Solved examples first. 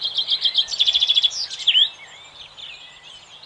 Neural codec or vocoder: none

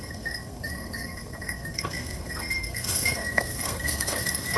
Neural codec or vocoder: codec, SNAC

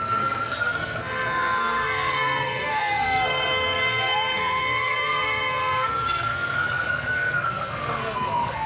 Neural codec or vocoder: codec, SNAC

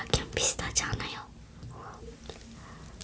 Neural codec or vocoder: none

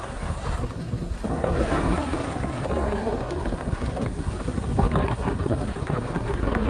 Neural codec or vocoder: codec, SNAC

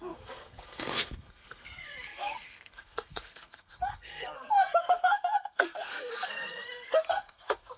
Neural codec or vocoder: codec, SNAC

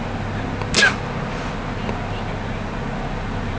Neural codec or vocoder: none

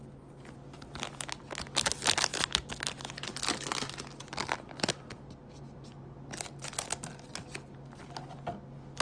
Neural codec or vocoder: none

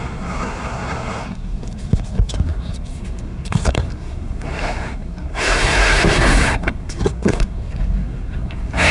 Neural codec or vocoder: codec, SNAC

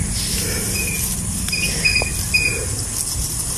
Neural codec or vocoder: none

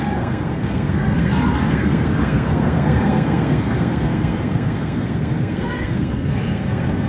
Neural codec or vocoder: codec, SNAC